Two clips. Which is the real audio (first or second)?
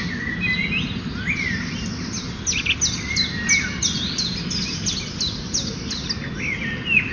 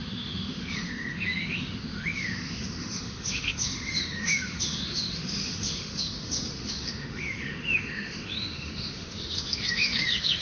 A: first